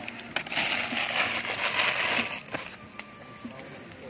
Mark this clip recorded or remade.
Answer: recorded